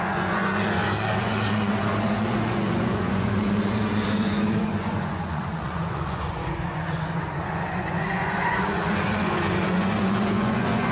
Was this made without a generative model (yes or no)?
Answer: no